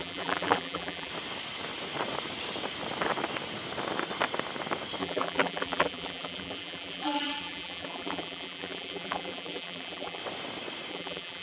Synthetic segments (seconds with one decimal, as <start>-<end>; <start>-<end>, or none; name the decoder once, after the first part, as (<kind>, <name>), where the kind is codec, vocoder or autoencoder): 0.0-1.1 (vocoder, BigVGAN v2); 5.0-10.2; 10.9-11.4